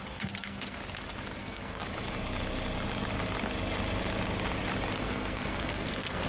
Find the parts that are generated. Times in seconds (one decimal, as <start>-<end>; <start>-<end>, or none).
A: 0.0-0.8; 1.4-1.8; 5.0-6.3